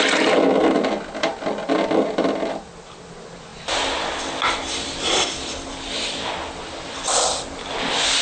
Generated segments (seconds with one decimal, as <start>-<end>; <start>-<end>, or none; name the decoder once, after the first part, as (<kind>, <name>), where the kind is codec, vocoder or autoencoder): none